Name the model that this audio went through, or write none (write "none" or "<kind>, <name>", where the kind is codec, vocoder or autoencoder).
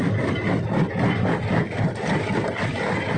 none